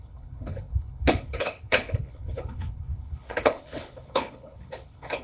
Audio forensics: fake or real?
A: fake